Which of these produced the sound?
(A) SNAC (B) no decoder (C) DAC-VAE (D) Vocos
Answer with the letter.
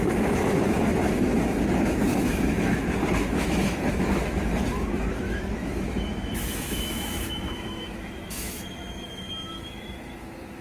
C